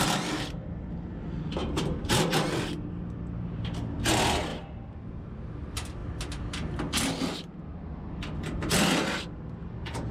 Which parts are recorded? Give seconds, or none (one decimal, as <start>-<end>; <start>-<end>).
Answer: 0.0-4.5; 5.5-10.1